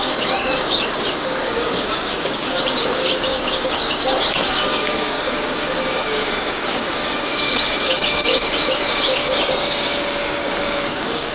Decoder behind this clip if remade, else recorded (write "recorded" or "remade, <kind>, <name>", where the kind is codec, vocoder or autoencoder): remade, codec, DAC